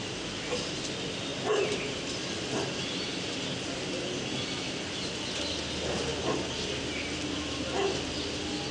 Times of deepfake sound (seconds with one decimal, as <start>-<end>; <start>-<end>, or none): none